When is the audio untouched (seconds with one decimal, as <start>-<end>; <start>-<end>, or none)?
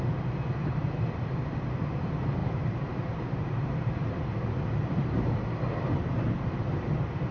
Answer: 0.0-0.6; 1.2-2.4; 4.1-5.0; 5.5-7.3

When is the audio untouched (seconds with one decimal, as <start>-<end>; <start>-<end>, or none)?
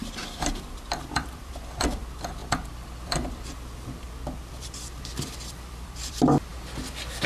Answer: 6.5-7.3